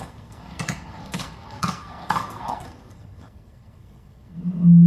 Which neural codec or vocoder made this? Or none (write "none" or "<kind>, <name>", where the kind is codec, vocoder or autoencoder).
codec, SNAC